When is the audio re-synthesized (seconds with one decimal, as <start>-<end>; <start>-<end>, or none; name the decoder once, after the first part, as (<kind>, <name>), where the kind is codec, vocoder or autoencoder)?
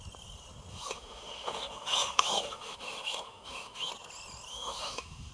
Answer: 0.7-3.9 (autoencoder, DAC-VAE); 4.5-5.3